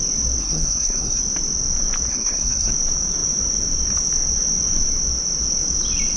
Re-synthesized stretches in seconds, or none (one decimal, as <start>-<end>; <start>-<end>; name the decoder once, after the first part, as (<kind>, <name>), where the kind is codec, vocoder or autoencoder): 0.4-1.2 (codec, SNAC); 2.1-2.7